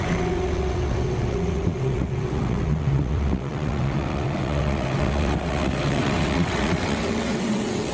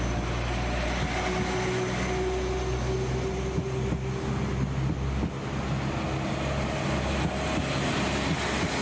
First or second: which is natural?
second